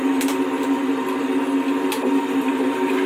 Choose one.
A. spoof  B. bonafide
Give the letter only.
B